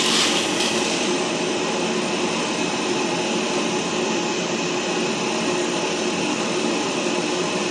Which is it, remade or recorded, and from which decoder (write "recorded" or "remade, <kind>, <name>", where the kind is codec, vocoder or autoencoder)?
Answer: recorded